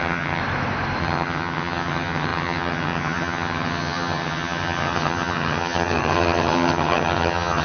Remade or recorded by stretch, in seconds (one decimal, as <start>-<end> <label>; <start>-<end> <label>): 0.0-0.4 remade; 0.4-1.0 recorded; 1.0-7.6 remade